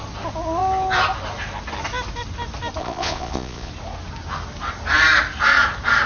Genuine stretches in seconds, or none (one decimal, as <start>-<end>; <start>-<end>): 0.0-2.8; 3.7-6.1